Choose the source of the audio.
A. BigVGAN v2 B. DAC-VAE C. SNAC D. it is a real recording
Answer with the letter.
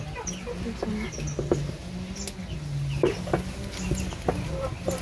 D